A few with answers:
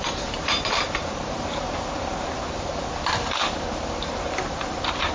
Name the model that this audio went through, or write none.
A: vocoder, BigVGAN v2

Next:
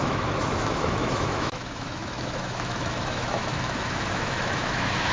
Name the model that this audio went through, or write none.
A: autoencoder, DAC-VAE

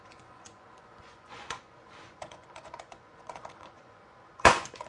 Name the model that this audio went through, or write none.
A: vocoder, Vocos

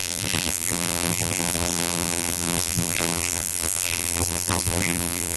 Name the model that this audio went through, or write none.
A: vocoder, BigVGAN v2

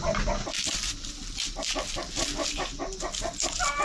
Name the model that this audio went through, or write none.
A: none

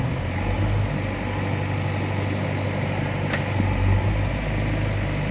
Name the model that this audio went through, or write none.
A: none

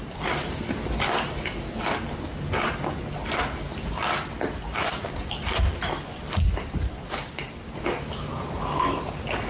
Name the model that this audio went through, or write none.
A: none